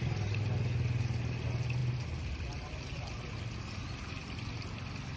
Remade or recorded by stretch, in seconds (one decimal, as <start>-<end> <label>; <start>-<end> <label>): 0.0-5.2 recorded